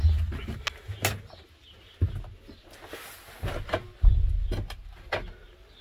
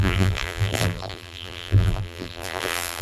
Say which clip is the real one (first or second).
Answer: first